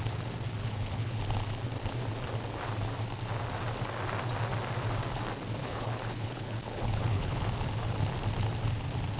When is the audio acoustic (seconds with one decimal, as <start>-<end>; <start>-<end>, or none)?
0.0-0.6; 1.2-5.6; 7.4-9.2